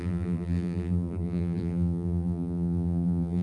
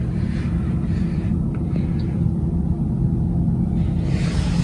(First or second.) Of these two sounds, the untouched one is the second